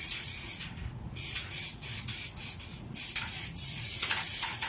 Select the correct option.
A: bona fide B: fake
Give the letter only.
B